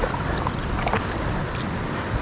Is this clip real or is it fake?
fake